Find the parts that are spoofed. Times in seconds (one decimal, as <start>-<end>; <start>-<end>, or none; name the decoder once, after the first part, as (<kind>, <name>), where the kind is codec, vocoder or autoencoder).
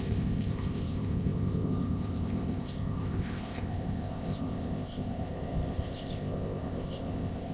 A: 0.0-7.5 (codec, ZipCodec)